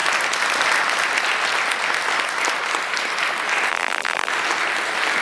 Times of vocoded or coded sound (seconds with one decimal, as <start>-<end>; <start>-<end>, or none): 3.7-4.3